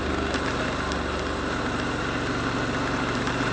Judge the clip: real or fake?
real